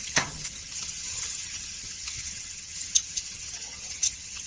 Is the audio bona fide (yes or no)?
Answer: no